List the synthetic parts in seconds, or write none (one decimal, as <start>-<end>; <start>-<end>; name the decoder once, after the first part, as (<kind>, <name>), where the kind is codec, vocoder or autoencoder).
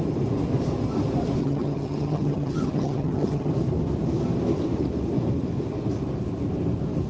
1.4-3.5 (vocoder, HiFi-GAN)